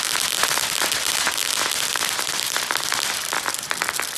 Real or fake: fake